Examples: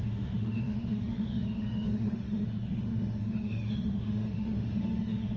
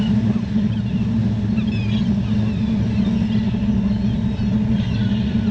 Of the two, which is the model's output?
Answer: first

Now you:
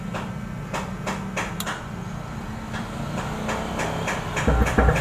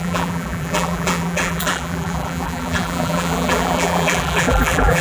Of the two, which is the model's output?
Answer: second